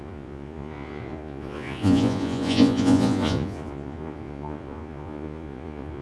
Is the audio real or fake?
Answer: fake